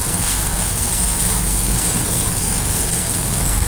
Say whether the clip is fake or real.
fake